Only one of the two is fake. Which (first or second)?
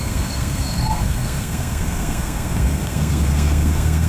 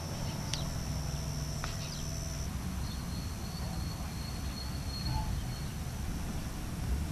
first